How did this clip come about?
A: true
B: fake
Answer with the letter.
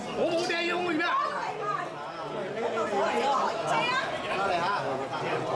A